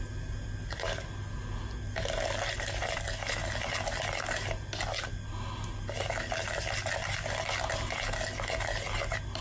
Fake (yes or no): no